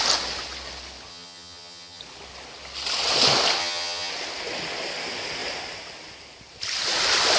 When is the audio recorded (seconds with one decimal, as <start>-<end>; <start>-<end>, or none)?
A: 0.0-1.1; 2.0-3.6; 4.1-7.4